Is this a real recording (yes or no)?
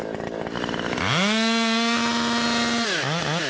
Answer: yes